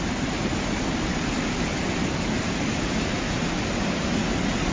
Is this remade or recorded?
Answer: recorded